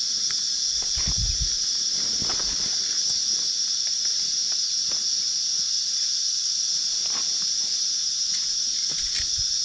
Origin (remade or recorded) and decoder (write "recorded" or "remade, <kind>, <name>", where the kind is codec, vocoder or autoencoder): recorded